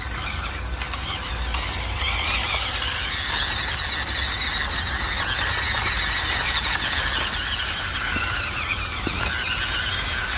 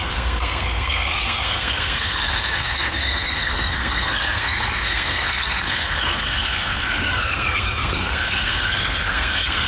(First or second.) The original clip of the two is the first